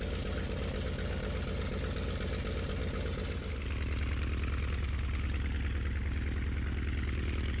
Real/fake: real